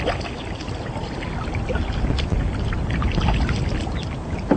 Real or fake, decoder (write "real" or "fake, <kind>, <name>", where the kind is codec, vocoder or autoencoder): real